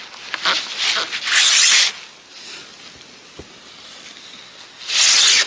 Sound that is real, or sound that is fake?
real